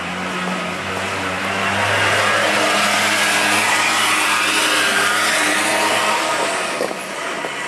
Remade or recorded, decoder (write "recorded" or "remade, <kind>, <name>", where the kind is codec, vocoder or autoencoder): recorded